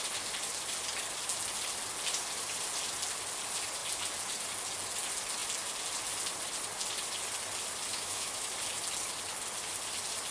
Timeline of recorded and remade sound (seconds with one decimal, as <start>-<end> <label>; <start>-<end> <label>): 0.0-7.9 recorded; 7.9-8.5 remade; 8.5-10.3 recorded